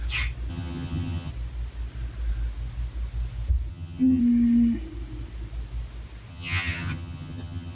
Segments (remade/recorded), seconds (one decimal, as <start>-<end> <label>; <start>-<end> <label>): 0.0-0.5 recorded; 0.5-1.3 remade; 1.3-3.7 recorded; 3.7-4.2 remade; 4.2-6.3 recorded; 6.3-7.8 remade